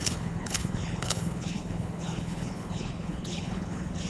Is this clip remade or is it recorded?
remade